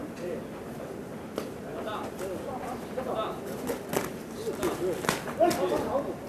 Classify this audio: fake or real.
real